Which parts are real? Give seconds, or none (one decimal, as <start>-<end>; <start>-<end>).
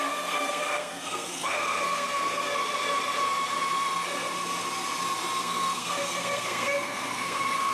2.5-5.4